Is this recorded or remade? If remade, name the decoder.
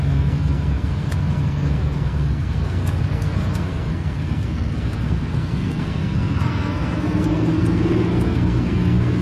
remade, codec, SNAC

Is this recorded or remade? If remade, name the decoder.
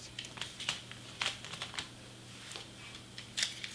recorded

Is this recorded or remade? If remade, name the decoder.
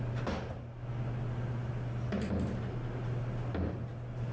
recorded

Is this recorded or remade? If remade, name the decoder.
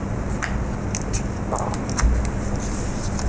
recorded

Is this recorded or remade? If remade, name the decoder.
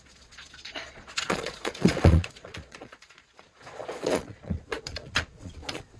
remade, vocoder, Vocos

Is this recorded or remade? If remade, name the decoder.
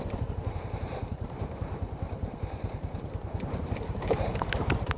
remade, vocoder, BigVGAN v2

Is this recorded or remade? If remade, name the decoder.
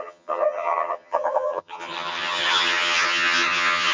remade, vocoder, HiFi-GAN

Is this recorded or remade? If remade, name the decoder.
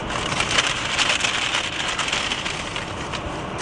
recorded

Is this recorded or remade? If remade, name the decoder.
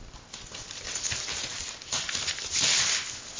recorded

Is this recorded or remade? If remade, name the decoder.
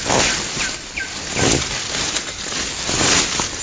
recorded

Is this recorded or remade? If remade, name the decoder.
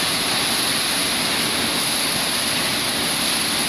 recorded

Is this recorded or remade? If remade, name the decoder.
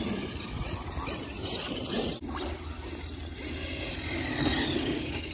recorded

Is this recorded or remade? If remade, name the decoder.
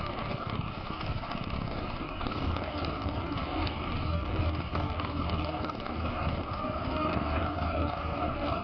remade, codec, DAC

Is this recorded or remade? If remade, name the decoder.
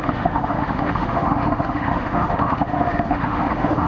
remade, autoencoder, DAC-VAE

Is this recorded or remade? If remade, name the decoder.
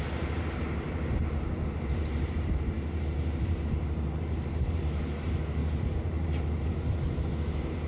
remade, vocoder, BigVGAN v2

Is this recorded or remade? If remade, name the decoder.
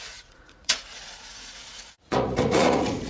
remade, vocoder, Vocos